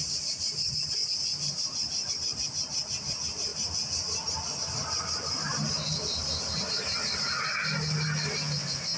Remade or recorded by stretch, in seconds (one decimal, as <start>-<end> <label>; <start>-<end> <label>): 0.0-9.0 recorded